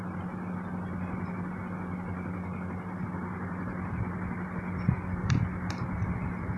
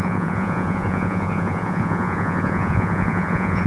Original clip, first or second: first